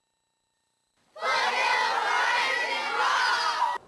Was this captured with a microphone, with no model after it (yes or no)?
yes